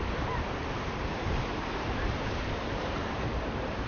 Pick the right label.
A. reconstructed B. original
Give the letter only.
A